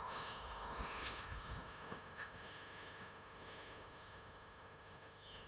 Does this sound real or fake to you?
fake